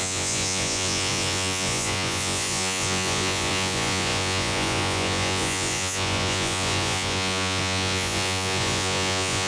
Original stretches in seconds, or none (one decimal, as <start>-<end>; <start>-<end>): none

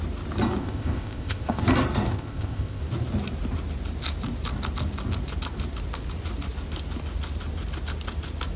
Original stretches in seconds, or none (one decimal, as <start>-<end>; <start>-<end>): 0.0-0.6; 1.6-2.1; 2.8-8.6

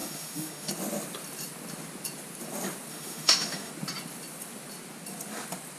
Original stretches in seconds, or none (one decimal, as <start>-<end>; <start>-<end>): 0.7-2.9; 3.7-5.8

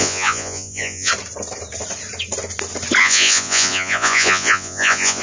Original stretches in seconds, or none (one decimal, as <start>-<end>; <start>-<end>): 1.1-3.0

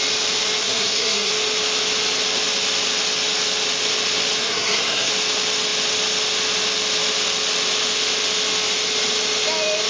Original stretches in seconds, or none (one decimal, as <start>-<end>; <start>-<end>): 0.0-0.6; 1.3-4.4; 5.1-9.9

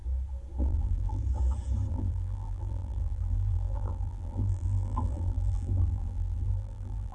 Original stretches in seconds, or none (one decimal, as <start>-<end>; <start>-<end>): 0.0-0.6; 1.2-1.9

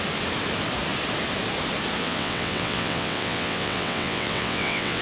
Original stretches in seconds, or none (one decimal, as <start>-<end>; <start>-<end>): 0.0-2.0

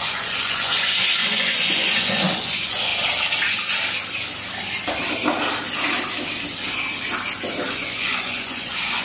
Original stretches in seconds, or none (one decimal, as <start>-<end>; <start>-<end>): 2.9-7.7